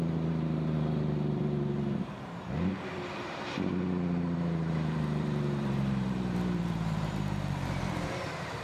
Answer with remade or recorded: remade